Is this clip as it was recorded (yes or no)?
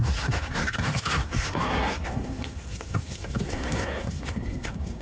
no